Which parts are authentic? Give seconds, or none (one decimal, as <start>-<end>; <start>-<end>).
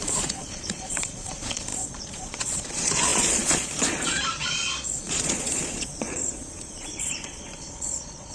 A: none